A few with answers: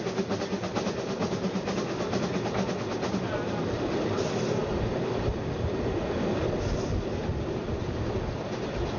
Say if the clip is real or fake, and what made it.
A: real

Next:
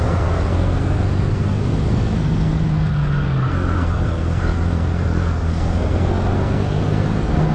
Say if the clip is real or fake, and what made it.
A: fake, codec, SNAC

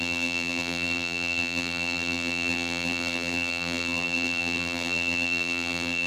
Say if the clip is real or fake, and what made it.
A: fake, vocoder, BigVGAN v2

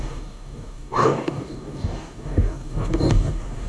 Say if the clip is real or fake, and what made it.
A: fake, codec, DAC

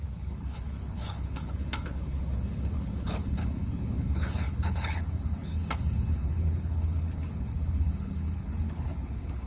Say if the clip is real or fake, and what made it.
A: fake, codec, HILCodec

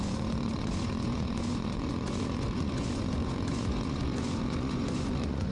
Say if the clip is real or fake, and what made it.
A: fake, vocoder, Vocos